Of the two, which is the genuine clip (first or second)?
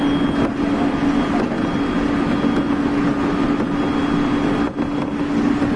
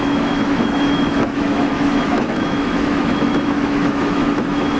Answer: first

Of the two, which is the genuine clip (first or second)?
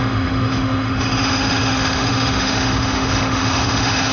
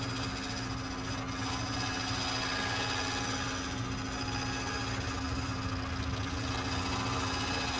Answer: second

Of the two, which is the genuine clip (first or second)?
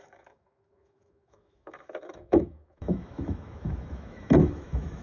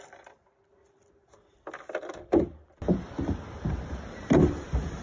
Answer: second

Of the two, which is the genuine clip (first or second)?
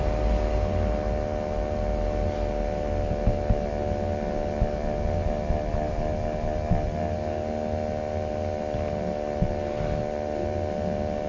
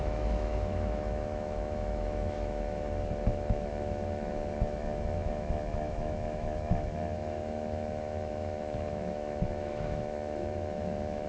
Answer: first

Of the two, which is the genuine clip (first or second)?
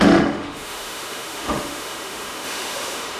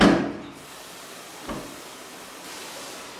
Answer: second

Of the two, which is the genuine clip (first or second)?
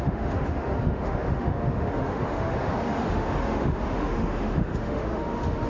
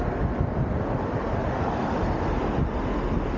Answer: second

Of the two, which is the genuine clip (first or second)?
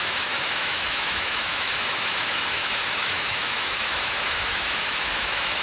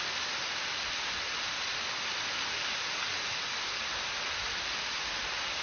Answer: second